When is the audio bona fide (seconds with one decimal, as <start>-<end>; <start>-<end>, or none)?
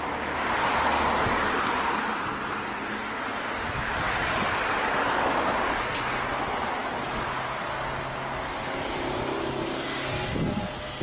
0.0-11.0